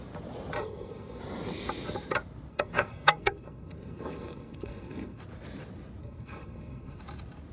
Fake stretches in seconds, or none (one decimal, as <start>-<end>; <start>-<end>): 0.6-1.2; 2.5-5.2; 6.0-7.0